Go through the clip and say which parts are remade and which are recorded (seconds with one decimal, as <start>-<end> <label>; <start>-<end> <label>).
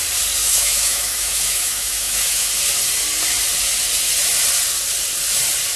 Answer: 0.0-0.4 recorded; 0.4-2.5 remade; 2.5-5.8 recorded